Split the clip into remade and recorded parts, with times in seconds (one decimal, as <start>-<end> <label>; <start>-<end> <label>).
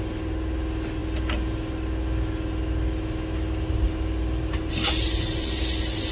0.0-6.1 recorded